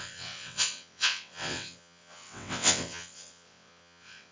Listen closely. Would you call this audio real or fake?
fake